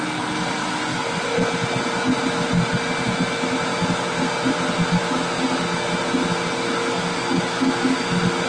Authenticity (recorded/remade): recorded